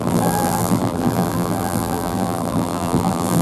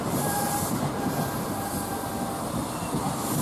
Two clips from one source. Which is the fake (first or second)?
first